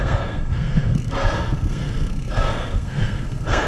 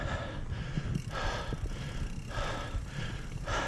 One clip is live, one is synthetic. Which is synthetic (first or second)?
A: first